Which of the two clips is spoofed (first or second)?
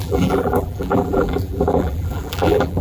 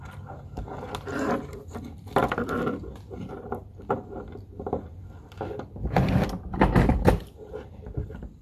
first